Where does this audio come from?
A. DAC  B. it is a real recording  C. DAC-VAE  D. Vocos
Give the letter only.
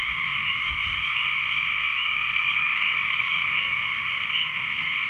C